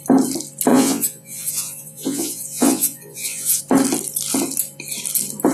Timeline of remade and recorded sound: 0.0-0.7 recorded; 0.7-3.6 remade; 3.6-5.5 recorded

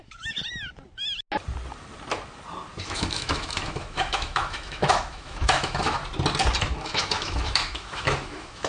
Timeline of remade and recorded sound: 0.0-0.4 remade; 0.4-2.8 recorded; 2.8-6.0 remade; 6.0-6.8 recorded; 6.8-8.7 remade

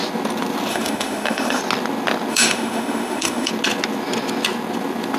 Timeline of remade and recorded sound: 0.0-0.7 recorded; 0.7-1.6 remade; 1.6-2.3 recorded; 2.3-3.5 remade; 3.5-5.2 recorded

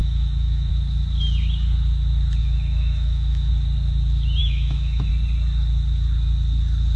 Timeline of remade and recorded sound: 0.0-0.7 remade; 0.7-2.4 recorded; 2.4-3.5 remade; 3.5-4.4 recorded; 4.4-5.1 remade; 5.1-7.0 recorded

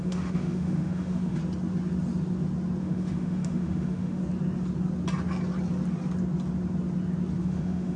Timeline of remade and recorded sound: 0.0-1.4 remade; 1.4-2.8 recorded; 2.8-4.2 remade; 4.2-7.4 recorded; 7.4-8.0 remade

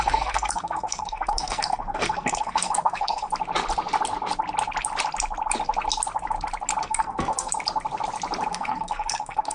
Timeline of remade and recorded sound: 0.0-3.3 remade; 3.3-6.8 recorded; 6.8-7.5 remade; 7.5-8.5 recorded; 8.5-9.5 remade

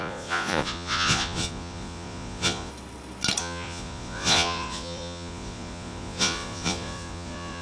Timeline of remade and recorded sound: 0.0-2.7 remade; 2.7-3.4 recorded; 3.4-7.6 remade

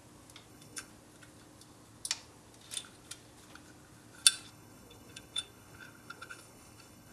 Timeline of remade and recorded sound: 0.0-0.5 recorded; 0.5-0.9 remade; 0.9-4.5 recorded; 4.5-7.1 remade